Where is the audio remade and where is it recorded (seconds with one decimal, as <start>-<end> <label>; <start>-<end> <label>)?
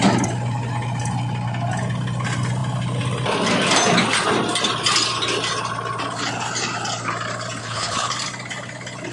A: 0.0-7.6 recorded; 7.6-8.1 remade; 8.1-9.1 recorded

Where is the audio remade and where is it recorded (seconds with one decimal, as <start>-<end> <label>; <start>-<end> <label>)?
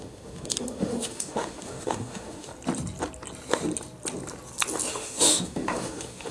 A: 0.0-2.5 remade; 2.5-4.9 recorded; 4.9-6.3 remade